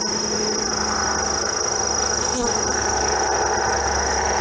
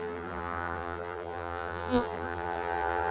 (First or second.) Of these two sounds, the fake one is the second